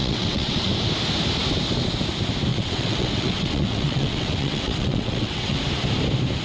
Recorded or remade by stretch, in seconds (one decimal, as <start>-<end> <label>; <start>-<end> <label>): 0.0-0.7 remade; 0.7-2.5 recorded; 2.5-5.6 remade; 5.6-6.4 recorded